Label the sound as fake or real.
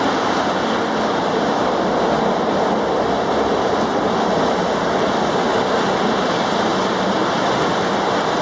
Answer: real